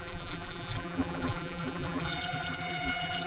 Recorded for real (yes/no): no